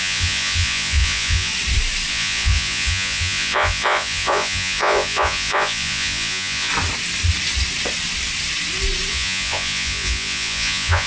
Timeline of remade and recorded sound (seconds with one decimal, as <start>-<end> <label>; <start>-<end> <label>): 0.0-1.5 remade; 1.5-2.1 recorded; 2.1-6.7 remade; 6.7-9.1 recorded; 9.1-11.1 remade